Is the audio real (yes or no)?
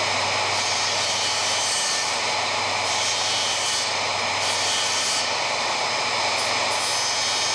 yes